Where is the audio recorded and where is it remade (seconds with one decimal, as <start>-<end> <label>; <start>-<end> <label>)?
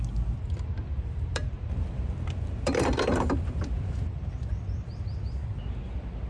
0.0-0.9 recorded; 0.9-3.9 remade; 3.9-6.3 recorded